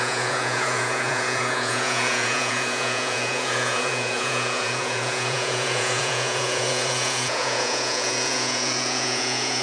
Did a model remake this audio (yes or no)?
yes